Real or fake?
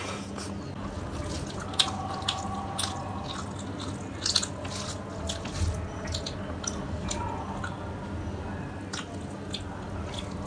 real